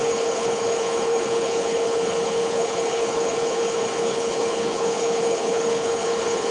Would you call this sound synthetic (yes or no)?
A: yes